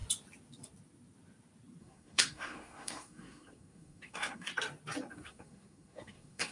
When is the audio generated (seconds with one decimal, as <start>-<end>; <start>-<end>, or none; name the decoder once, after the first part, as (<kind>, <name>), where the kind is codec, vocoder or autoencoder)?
1.8-4.5 (codec, SNAC); 5.1-6.5